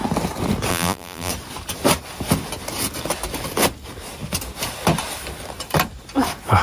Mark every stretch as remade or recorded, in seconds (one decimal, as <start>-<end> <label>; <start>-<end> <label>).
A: 0.0-0.7 recorded; 0.7-1.3 remade; 1.3-6.6 recorded